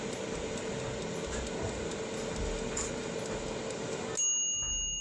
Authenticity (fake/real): real